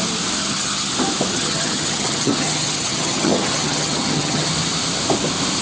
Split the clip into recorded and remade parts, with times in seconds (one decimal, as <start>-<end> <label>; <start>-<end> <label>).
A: 0.0-0.4 recorded; 0.4-0.9 remade; 0.9-1.3 recorded; 1.3-4.5 remade; 4.5-5.6 recorded